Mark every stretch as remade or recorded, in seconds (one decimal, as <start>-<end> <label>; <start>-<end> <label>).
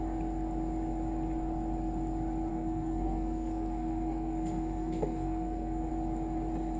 0.0-2.5 recorded; 2.5-5.9 remade; 5.9-6.8 recorded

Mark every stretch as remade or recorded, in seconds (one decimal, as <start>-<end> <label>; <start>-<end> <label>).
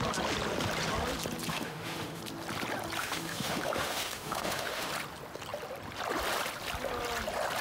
0.0-1.5 recorded; 1.5-2.2 remade; 2.2-3.0 recorded; 3.0-4.9 remade; 4.9-7.6 recorded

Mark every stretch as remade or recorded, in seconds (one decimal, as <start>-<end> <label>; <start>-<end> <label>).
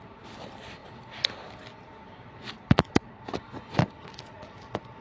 0.0-5.0 recorded